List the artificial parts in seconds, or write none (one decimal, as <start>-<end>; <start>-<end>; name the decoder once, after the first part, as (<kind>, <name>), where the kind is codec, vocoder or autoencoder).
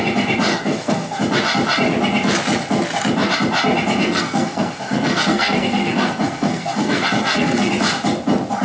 0.5-1.2 (codec, SNAC); 4.0-7.7